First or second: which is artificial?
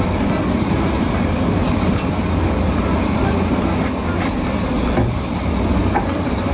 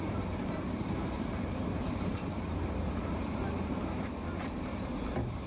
second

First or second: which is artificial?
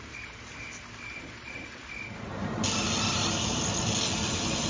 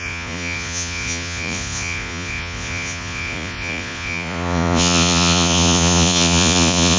second